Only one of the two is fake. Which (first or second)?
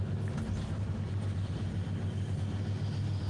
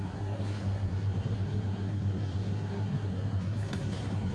second